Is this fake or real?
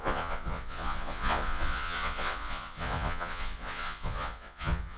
fake